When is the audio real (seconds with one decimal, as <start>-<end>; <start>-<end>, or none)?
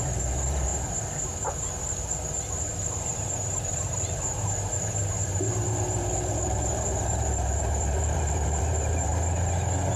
0.7-1.5; 9.1-10.0